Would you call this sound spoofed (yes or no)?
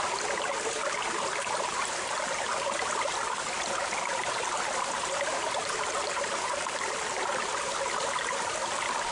no